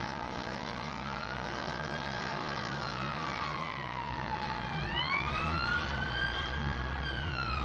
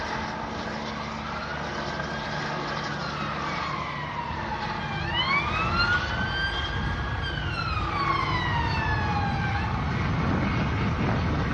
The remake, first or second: first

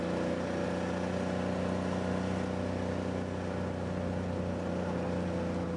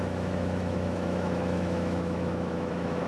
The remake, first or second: second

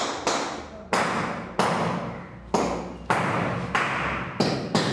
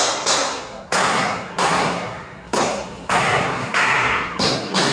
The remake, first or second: second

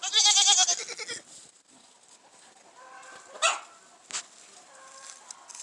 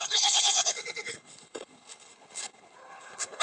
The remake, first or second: second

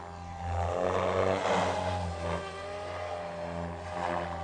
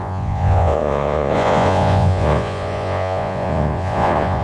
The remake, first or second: second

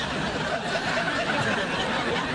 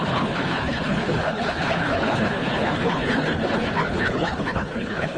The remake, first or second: second